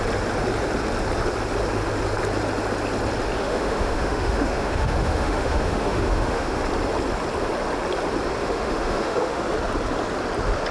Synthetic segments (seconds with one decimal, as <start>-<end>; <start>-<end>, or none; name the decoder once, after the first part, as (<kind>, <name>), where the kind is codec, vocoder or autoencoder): 3.4-6.6 (autoencoder, DAC-VAE); 8.4-9.4